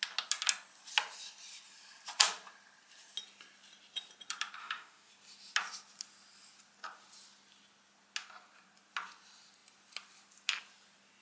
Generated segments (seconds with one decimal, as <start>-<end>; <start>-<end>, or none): 4.6-5.1